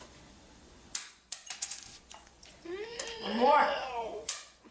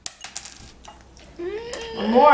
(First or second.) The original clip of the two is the second